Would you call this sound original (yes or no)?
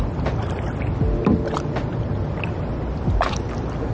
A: yes